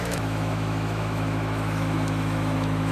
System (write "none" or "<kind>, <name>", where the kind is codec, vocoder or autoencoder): autoencoder, DAC-VAE